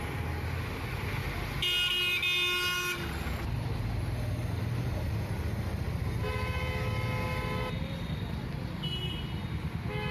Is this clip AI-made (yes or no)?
no